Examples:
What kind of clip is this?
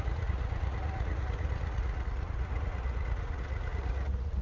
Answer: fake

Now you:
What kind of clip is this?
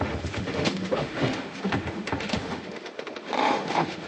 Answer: fake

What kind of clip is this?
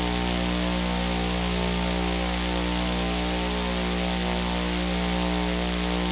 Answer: real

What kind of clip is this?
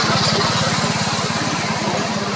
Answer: real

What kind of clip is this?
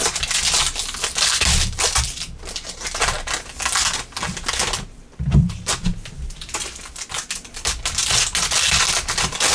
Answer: real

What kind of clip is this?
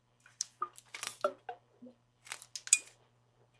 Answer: real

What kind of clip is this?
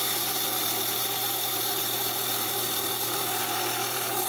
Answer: fake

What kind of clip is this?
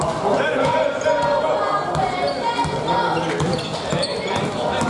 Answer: real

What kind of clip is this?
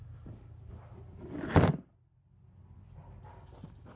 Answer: fake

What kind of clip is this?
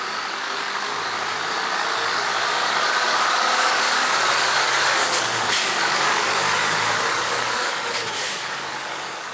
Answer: fake